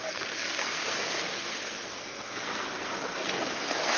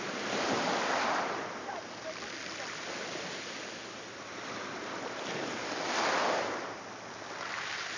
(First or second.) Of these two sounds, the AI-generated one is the first